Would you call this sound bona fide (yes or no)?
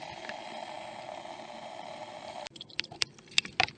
yes